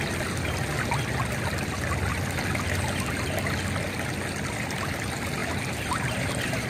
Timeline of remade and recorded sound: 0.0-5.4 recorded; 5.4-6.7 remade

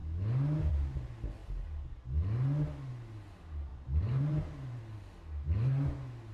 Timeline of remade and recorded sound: 0.0-3.7 recorded; 3.7-4.8 remade; 4.8-6.3 recorded